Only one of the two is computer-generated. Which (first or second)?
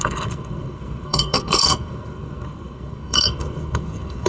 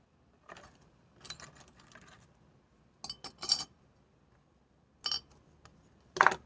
first